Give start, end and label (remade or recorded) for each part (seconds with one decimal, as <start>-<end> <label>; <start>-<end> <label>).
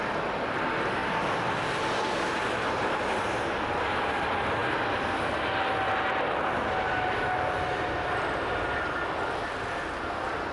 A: 0.0-10.5 recorded